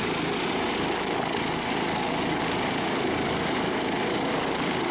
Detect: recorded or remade recorded